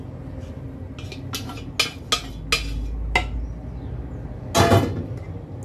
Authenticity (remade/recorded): recorded